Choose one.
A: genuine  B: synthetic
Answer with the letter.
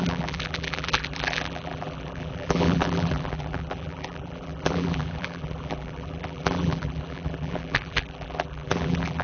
B